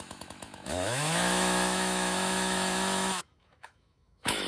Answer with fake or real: fake